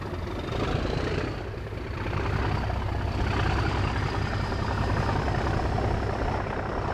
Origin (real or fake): real